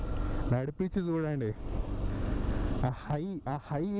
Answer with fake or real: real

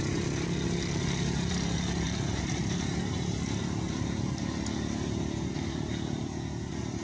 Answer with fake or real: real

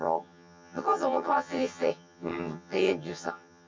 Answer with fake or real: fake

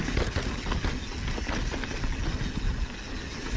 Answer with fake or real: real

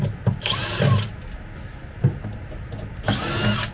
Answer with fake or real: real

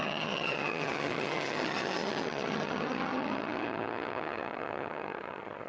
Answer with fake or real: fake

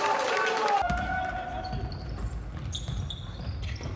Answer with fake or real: real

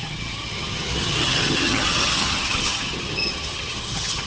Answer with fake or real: fake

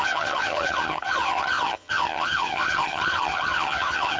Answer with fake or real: fake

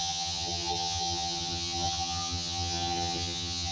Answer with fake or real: fake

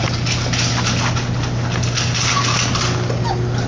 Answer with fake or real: real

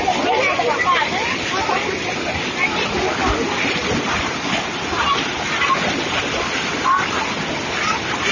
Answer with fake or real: real